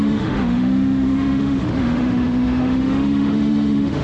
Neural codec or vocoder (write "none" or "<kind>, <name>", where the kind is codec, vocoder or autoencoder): autoencoder, DAC-VAE